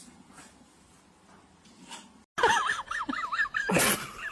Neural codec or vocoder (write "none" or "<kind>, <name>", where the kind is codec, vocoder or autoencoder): none